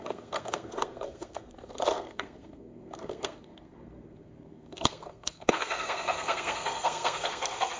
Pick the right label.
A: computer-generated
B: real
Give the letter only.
A